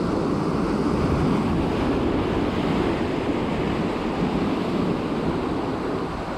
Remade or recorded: recorded